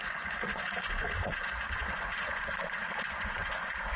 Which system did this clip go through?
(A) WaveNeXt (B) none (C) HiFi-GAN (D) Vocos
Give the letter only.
D